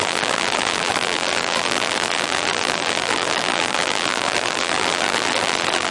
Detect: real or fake fake